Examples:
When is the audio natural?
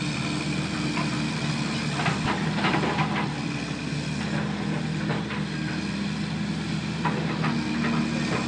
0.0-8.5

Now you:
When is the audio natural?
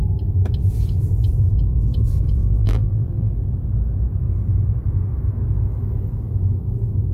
0.0-2.4; 3.3-7.1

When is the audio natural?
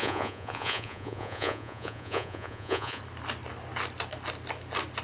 3.0-5.0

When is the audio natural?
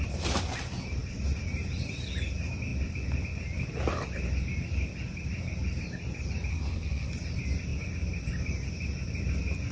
0.0-6.5; 7.1-9.7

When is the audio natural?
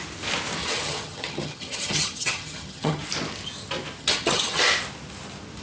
0.0-0.6; 3.0-4.0; 4.6-5.6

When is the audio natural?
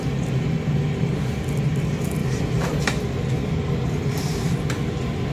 0.0-2.2; 2.8-4.0; 4.5-5.3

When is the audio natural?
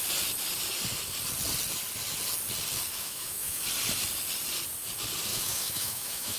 0.0-2.9; 3.6-5.3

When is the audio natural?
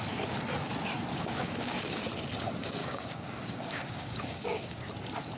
0.0-1.1; 2.0-2.8; 4.9-5.4